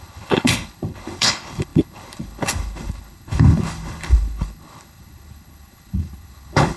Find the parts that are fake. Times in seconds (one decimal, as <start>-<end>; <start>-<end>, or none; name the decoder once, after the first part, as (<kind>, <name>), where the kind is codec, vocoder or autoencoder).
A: 0.0-6.8 (codec, HILCodec)